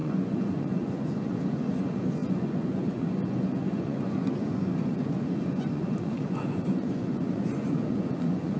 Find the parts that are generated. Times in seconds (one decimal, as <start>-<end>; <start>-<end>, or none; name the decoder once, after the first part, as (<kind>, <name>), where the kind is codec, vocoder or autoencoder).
0.0-8.6 (vocoder, Vocos)